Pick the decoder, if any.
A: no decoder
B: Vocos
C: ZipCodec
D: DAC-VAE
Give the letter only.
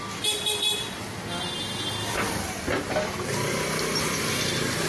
A